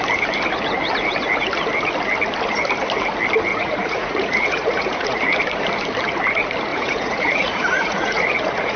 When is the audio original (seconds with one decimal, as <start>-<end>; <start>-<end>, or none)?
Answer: 0.0-3.5; 5.2-6.7